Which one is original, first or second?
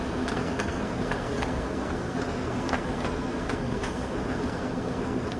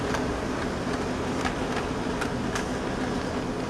second